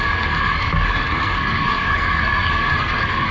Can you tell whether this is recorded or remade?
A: remade